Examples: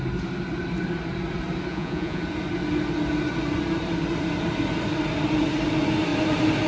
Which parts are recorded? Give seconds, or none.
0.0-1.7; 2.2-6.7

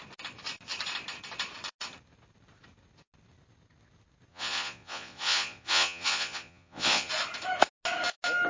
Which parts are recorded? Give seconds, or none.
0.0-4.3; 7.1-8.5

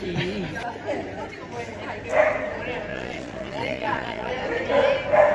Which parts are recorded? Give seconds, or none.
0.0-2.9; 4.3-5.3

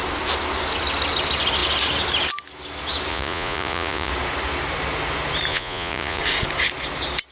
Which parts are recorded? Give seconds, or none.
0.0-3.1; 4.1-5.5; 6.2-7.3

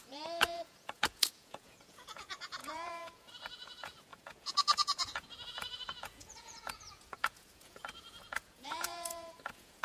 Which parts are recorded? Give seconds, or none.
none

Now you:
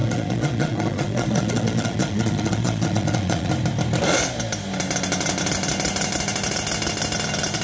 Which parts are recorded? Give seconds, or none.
3.5-7.6

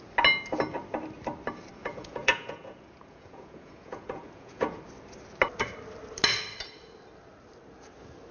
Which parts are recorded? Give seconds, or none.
0.0-1.8; 4.8-8.3